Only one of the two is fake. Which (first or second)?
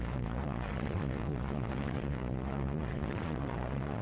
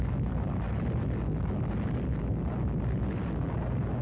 first